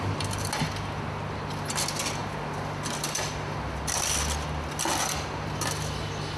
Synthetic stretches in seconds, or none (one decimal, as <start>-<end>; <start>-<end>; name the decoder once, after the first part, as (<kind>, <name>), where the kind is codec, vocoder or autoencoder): none